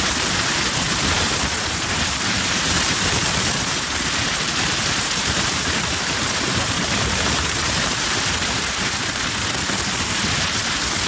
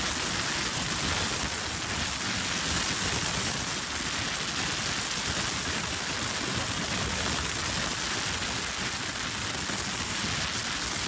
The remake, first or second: first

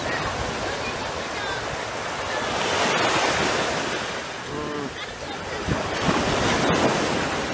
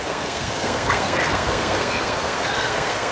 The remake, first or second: second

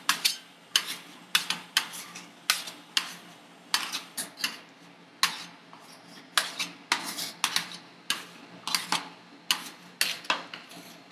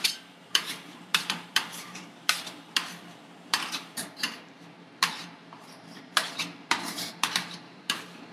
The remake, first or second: second